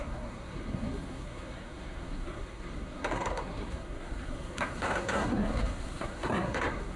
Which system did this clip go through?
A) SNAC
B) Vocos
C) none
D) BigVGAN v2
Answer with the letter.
A